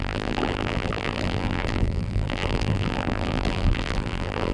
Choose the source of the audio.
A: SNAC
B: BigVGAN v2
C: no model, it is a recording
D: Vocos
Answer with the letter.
B